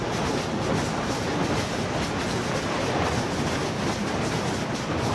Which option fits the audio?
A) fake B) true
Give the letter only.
B